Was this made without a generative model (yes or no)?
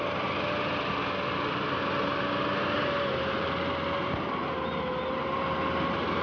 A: yes